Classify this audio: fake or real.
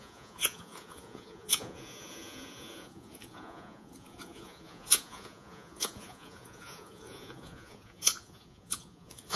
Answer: fake